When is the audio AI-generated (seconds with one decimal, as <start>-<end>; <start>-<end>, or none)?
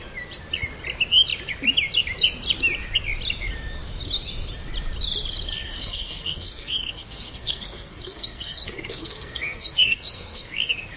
5.6-11.0